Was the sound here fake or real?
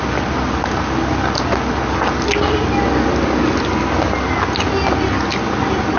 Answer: real